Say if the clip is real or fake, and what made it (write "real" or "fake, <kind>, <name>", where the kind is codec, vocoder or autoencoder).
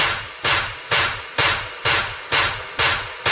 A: real